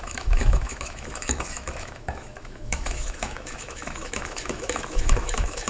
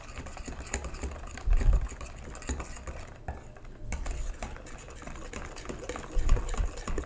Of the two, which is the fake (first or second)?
first